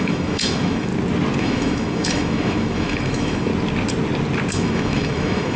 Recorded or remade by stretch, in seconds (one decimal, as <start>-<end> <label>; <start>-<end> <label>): 0.0-0.9 remade; 0.9-1.4 recorded; 1.4-3.5 remade; 3.5-4.5 recorded; 4.5-5.6 remade